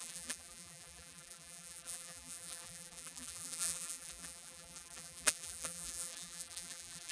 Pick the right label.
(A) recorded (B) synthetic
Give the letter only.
B